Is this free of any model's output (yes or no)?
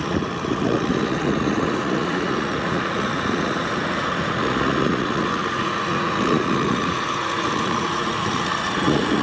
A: no